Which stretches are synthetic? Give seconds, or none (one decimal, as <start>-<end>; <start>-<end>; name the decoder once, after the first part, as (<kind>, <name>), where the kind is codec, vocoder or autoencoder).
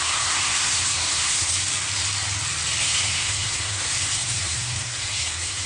0.0-1.6 (codec, SNAC); 2.8-5.7